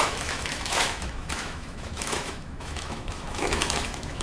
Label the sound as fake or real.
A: fake